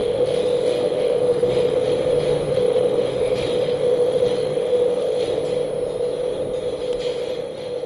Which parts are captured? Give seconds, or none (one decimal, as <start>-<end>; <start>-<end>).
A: 2.1-2.5; 5.4-7.2